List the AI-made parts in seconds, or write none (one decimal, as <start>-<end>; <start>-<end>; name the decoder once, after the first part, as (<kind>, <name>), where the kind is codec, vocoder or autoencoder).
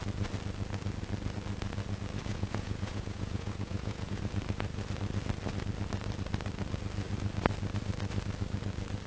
2.3-4.2 (vocoder, Vocos)